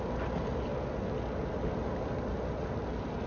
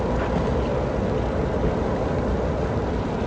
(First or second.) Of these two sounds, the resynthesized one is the second